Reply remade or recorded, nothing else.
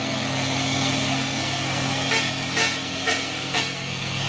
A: remade